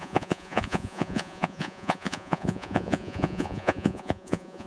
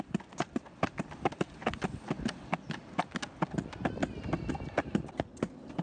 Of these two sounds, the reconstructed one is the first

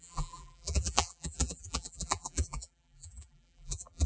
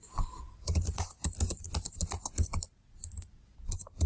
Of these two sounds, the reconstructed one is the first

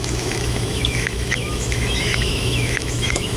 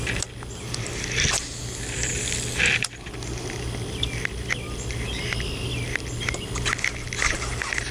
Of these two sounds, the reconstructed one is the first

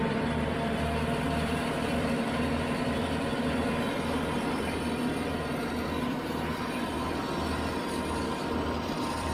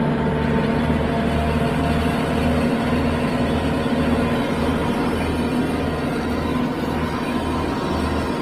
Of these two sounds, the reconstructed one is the first